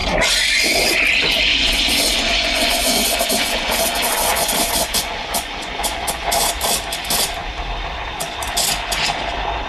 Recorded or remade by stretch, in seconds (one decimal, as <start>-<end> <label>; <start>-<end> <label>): 0.0-1.5 recorded; 1.5-6.5 remade; 6.5-9.7 recorded